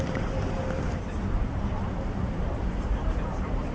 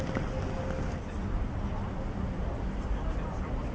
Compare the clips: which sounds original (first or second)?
second